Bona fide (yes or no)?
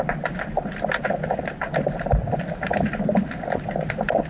yes